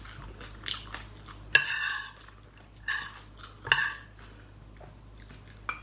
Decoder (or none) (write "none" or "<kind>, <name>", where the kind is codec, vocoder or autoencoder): none